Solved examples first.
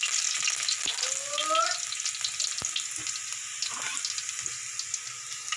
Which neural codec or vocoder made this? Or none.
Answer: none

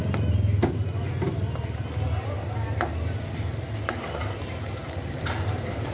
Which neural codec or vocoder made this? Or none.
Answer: none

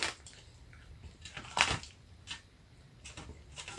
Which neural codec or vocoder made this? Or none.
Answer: none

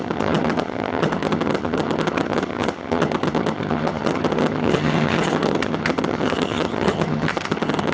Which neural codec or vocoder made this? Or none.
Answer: vocoder, HiFi-GAN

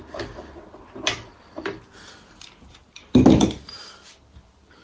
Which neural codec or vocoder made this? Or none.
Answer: none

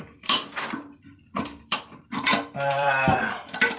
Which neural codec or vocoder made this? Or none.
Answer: vocoder, BigVGAN v2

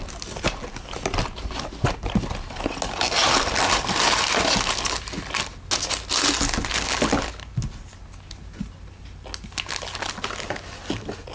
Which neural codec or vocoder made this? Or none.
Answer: none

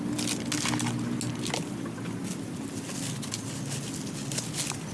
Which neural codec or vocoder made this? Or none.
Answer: none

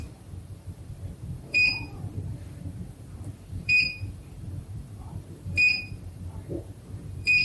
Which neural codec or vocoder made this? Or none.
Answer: vocoder, BigVGAN v2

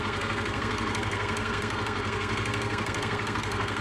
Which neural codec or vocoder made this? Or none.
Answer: codec, SNAC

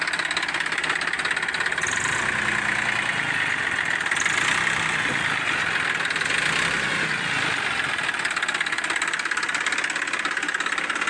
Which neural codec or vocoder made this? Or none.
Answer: none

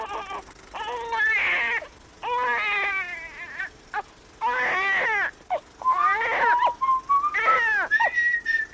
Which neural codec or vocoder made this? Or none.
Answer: none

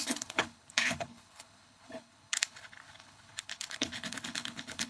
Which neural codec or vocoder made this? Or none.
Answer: codec, HILCodec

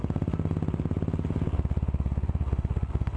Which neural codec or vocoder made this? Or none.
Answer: none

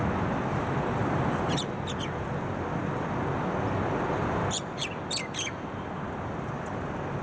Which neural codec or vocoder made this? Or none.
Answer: none